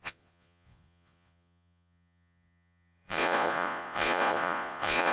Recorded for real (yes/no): no